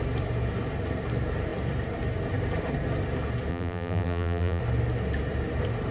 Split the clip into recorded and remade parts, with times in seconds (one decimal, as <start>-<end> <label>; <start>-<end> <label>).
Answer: 0.0-3.5 recorded; 3.5-4.6 remade; 4.6-5.9 recorded